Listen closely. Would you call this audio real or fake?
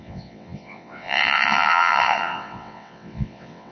fake